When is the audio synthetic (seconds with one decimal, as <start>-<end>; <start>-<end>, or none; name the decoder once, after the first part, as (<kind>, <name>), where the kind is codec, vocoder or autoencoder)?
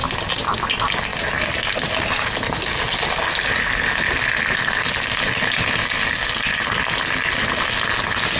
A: none